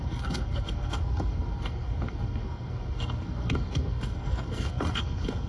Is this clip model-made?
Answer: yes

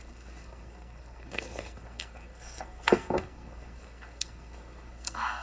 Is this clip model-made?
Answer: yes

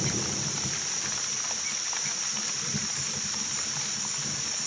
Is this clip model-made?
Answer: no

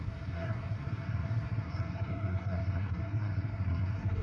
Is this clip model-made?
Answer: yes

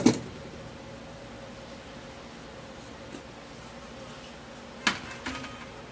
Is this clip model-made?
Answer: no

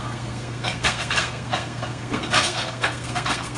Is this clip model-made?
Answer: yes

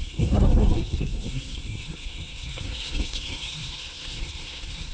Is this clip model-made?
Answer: yes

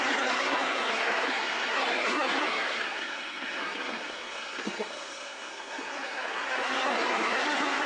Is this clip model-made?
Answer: yes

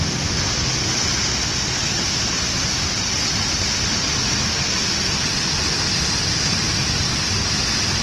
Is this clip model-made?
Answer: no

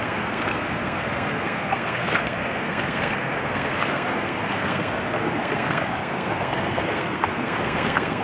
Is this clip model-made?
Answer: yes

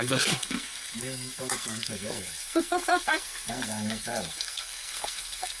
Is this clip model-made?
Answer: yes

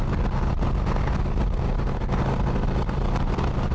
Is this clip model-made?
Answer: no